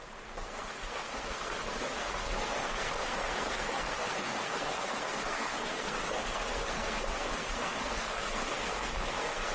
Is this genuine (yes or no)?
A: no